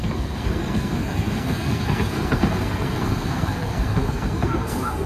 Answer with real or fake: fake